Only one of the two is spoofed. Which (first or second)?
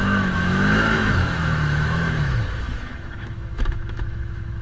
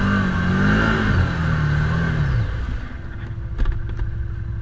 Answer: first